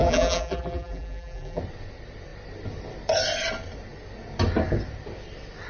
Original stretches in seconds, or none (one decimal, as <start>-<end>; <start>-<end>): 1.6-5.7